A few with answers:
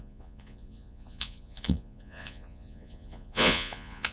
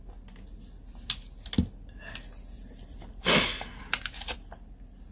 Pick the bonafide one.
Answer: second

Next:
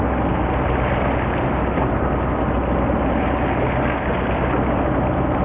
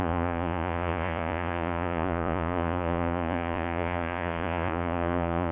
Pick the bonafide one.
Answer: first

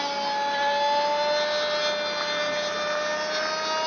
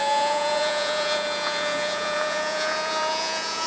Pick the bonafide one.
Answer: first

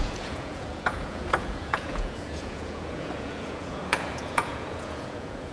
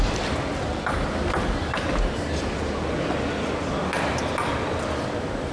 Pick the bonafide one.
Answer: second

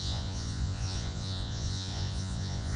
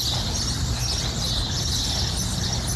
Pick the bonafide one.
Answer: second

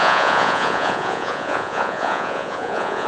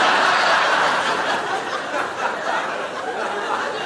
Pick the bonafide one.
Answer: second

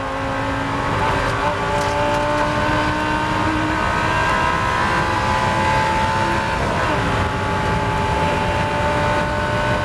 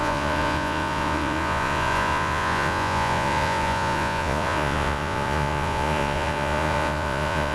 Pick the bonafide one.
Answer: first